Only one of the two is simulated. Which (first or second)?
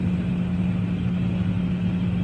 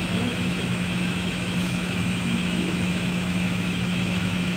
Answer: second